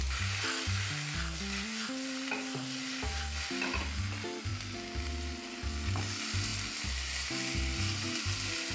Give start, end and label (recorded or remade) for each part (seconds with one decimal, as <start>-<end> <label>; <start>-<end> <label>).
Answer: 0.0-8.7 recorded